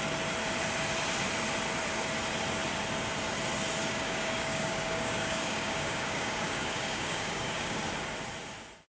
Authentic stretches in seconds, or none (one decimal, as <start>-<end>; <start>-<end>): 0.0-3.8; 7.8-8.9